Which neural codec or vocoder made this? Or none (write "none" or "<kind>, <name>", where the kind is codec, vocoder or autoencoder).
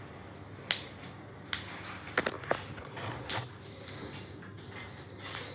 none